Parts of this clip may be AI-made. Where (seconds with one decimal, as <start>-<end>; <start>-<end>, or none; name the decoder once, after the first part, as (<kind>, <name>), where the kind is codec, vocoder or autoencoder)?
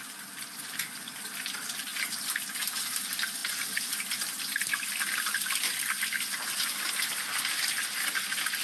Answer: none